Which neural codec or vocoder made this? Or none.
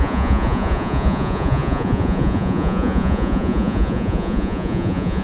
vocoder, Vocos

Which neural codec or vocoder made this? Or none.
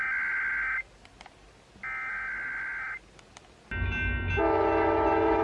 none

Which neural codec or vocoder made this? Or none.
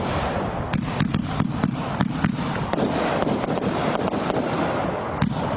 none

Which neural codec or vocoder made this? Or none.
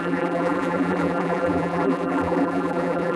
vocoder, BigVGAN v2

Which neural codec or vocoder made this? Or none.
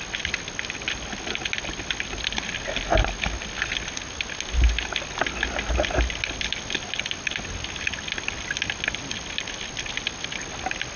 none